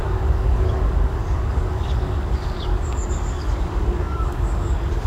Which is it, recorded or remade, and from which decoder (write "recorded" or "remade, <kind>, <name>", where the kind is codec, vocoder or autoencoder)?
remade, codec, DAC